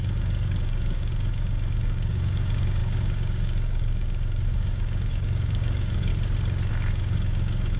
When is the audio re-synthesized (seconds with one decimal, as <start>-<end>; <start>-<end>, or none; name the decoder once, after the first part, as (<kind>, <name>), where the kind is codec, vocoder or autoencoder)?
0.0-6.1 (codec, DAC); 6.7-7.8